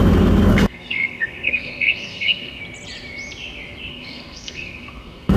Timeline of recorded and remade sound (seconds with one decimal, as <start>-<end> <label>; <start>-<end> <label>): 0.0-0.5 recorded; 0.5-2.6 remade; 2.6-3.9 recorded; 3.9-5.4 remade